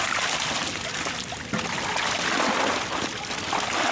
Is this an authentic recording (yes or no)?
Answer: yes